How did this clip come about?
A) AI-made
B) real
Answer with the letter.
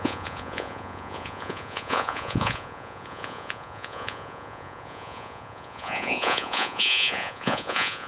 A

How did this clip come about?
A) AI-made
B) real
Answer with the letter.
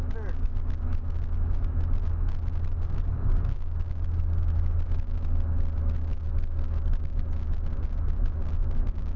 B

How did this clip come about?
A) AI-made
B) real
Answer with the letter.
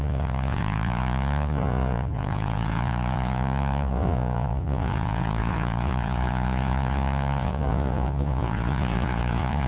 A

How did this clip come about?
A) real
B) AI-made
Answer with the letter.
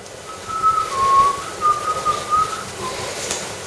A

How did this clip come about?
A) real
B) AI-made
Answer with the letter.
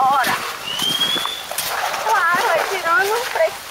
A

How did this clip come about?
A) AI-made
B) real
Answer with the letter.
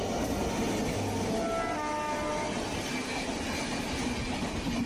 B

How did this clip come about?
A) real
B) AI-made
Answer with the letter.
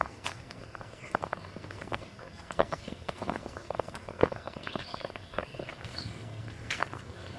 B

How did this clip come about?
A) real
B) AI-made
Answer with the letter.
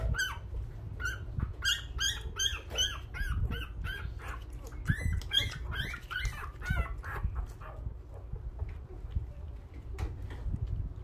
A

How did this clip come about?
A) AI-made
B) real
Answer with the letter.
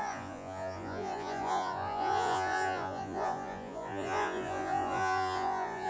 A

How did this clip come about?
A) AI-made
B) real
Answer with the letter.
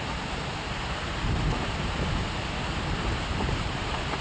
A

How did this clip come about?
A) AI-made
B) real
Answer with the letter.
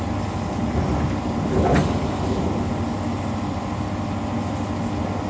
B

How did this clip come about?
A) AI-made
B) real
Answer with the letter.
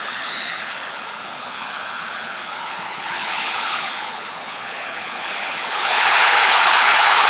A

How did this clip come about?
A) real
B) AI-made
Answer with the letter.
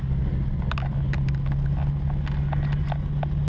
A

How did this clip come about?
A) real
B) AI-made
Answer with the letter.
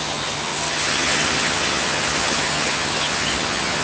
B